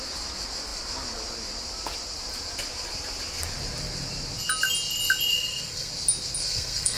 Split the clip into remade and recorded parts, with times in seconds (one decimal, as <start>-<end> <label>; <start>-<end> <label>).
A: 0.0-5.3 recorded; 5.3-5.9 remade; 5.9-6.4 recorded; 6.4-7.0 remade